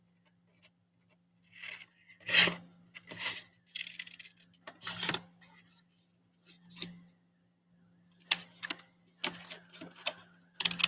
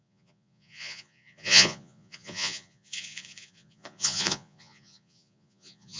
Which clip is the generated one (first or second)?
second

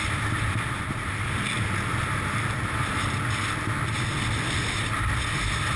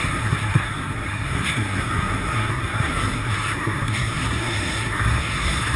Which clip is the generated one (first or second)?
second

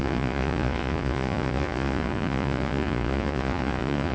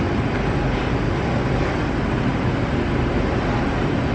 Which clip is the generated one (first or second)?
first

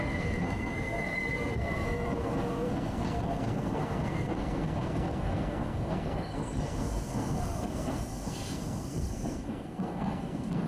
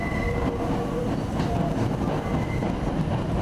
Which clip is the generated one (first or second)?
first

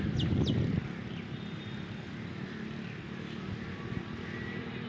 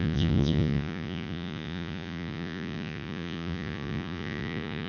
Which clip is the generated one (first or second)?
second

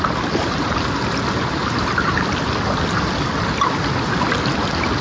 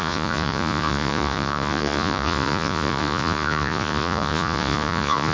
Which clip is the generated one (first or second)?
second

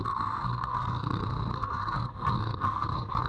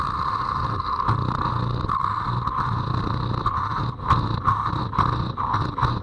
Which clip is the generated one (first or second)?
first